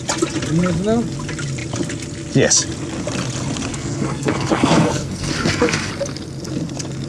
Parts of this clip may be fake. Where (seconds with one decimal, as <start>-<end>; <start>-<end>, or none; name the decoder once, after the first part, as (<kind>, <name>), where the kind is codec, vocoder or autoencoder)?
3.7-5.9 (codec, SNAC)